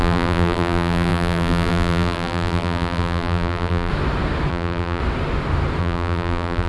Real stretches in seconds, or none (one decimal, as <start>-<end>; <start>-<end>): 3.9-4.5; 5.0-5.8

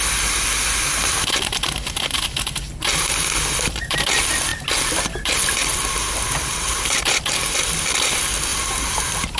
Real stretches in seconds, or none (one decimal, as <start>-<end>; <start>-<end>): 0.0-8.5